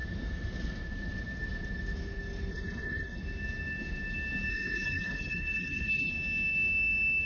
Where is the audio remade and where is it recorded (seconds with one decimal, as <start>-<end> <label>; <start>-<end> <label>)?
0.0-2.5 recorded; 2.5-3.2 remade; 3.2-4.5 recorded; 4.5-6.1 remade; 6.1-7.3 recorded